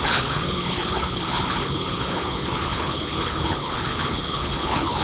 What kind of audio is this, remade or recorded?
remade